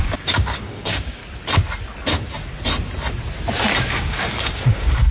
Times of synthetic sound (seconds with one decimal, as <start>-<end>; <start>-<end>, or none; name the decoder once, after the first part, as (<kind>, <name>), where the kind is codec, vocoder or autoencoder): 0.0-1.2 (codec, DAC); 3.8-5.1